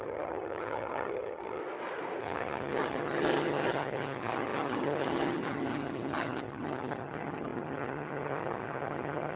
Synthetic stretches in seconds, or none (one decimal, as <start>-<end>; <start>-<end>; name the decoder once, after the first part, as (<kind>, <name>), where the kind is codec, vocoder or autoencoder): 0.0-1.6 (vocoder, HiFi-GAN); 2.2-9.4